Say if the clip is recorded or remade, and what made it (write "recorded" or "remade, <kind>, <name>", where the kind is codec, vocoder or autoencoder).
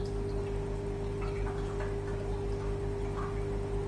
recorded